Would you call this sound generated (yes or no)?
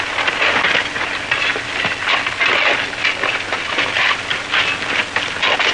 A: no